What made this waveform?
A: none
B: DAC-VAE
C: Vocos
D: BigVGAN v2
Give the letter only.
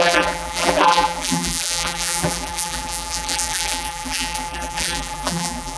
D